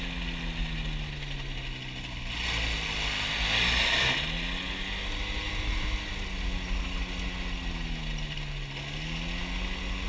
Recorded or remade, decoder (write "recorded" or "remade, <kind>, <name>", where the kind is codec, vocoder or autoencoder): recorded